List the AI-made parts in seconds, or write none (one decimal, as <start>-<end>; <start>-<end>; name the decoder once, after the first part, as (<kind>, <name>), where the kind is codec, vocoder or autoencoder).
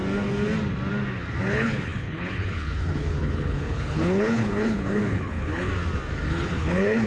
1.4-5.7 (codec, HILCodec); 6.3-7.1